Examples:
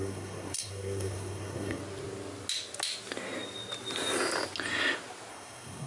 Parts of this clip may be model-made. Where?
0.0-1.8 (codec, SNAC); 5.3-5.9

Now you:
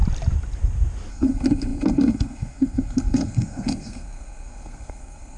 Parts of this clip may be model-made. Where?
1.1-5.4 (codec, SNAC)

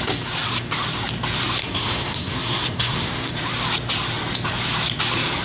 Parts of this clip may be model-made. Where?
1.6-3.3 (codec, SNAC)

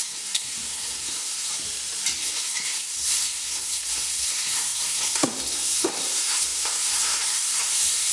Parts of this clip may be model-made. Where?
0.0-1.5 (codec, SNAC); 2.2-8.1

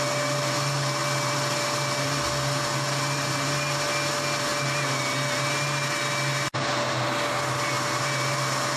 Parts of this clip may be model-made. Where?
none

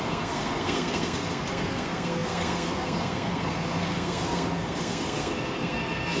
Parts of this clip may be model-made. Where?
0.0-6.2 (codec, SNAC)

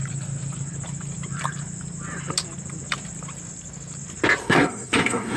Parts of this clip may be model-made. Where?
4.4-5.4 (codec, SNAC)